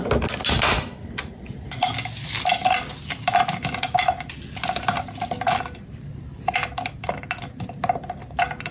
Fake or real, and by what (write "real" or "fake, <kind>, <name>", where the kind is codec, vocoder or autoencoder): real